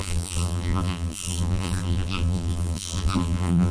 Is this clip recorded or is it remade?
remade